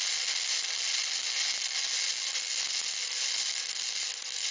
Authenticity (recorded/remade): recorded